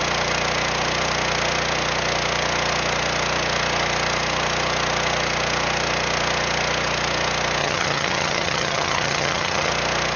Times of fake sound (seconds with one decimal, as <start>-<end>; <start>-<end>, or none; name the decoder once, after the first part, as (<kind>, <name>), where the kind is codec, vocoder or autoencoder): 7.6-9.7 (vocoder, HiFi-GAN)